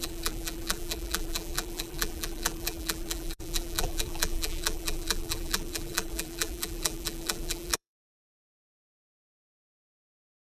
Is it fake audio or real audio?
fake